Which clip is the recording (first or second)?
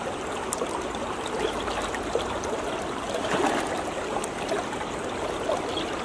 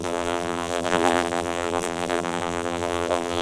first